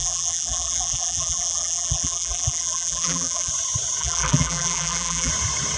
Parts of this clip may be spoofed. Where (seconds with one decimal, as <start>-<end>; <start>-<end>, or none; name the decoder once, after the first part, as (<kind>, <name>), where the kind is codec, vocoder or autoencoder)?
0.0-3.5 (vocoder, BigVGAN v2); 4.0-5.3